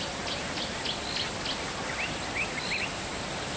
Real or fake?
real